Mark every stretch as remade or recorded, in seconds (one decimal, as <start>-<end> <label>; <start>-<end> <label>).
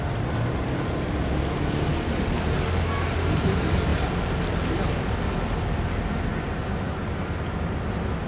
0.0-3.9 recorded; 3.9-5.3 remade; 5.3-8.3 recorded